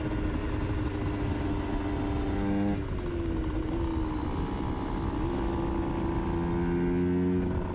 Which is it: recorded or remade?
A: recorded